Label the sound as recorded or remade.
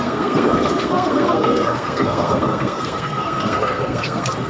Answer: remade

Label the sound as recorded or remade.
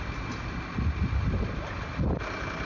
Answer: recorded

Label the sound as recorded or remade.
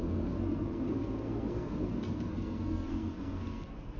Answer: remade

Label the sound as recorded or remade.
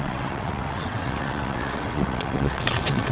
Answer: remade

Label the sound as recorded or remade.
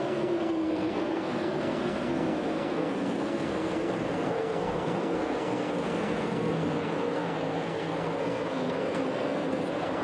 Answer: remade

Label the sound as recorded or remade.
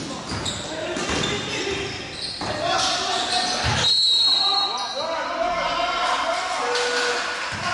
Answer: recorded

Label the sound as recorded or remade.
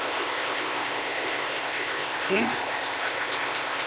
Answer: remade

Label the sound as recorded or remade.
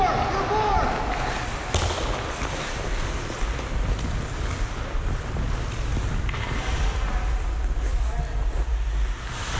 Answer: recorded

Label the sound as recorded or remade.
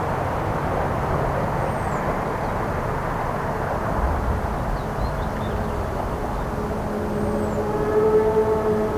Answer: recorded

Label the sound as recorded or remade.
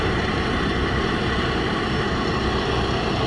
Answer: recorded